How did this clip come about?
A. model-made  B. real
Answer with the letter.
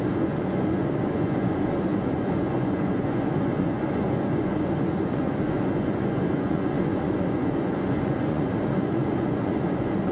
A